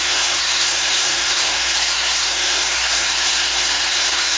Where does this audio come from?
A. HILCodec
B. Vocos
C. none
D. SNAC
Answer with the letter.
D